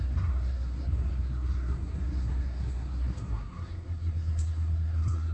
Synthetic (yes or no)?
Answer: yes